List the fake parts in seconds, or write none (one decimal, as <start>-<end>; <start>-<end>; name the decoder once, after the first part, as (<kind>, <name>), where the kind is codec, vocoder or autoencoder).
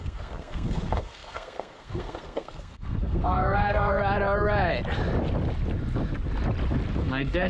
0.0-4.0 (codec, SNAC); 7.0-7.5